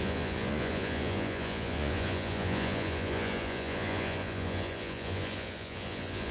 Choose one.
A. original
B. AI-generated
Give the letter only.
B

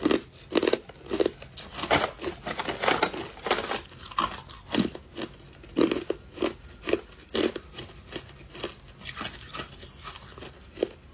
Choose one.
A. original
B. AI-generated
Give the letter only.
A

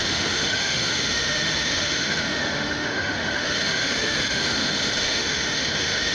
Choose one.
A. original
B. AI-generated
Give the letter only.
B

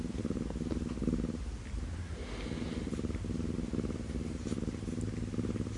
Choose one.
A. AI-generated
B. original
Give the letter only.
B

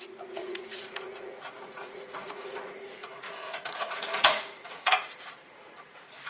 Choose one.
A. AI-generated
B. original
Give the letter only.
A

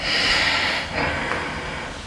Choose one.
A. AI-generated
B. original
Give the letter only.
B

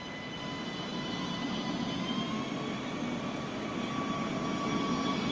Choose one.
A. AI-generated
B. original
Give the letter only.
B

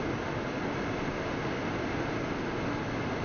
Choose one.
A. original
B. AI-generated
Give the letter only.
A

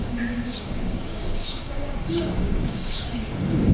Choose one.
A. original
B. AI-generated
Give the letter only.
B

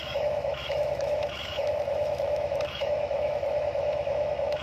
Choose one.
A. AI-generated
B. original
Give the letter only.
A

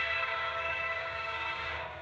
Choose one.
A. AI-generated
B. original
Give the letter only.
A